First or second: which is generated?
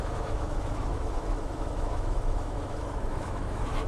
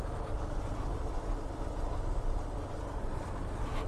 first